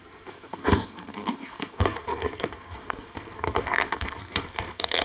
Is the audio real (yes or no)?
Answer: no